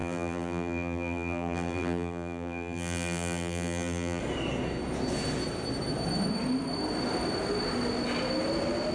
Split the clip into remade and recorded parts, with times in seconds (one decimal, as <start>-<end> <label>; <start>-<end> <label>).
0.0-4.2 remade; 4.2-8.9 recorded